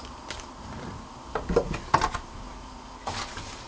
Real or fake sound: real